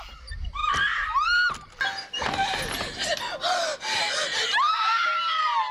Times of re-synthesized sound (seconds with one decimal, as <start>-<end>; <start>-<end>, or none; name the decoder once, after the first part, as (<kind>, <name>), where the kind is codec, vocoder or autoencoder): none